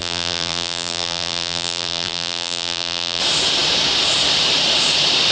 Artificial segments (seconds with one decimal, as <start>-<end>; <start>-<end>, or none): 0.0-3.2